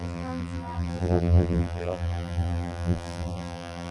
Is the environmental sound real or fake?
fake